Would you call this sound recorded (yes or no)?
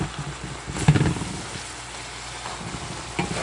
yes